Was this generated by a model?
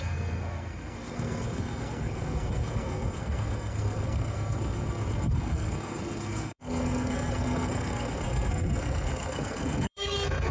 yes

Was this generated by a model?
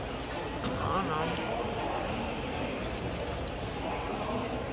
no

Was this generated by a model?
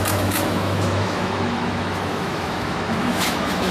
yes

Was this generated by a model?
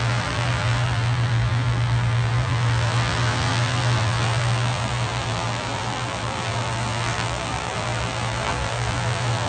yes